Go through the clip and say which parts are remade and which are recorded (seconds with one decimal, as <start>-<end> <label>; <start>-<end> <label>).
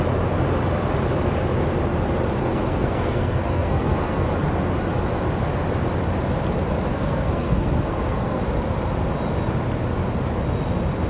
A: 0.0-2.4 recorded; 2.4-4.3 remade; 4.3-6.9 recorded; 6.9-8.4 remade; 8.4-11.1 recorded